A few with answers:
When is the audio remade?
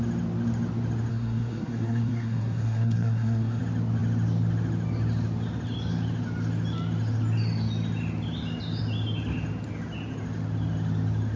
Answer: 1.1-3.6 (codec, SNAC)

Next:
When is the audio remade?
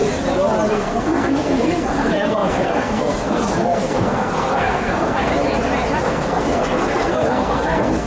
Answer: 0.7-5.3 (codec, SNAC); 6.0-8.1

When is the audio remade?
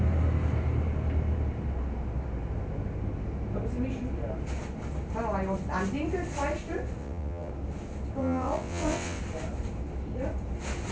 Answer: 7.0-7.5 (vocoder, WaveNeXt); 8.2-9.2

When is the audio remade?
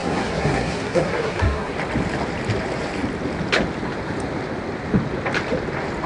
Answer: 0.0-1.7 (codec, SNAC)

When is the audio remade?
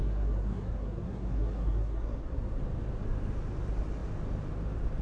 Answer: 0.0-2.6 (codec, SNAC)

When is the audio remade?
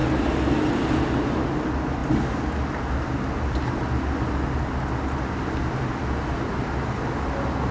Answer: none